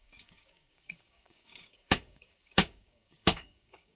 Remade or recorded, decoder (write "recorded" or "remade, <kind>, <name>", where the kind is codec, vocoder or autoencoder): remade, codec, DAC